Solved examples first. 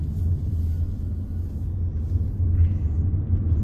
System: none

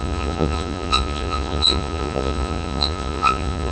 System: vocoder, Vocos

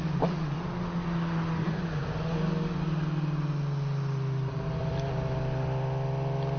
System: none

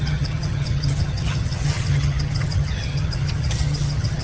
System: vocoder, HiFi-GAN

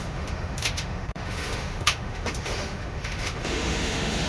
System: autoencoder, DAC-VAE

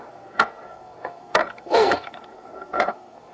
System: codec, SNAC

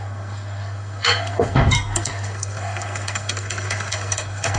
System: codec, SNAC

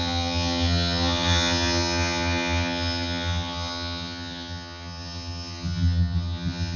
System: vocoder, HiFi-GAN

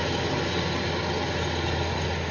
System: none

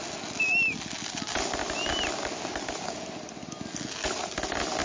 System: none